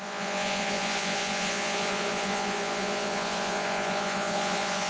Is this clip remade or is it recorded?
remade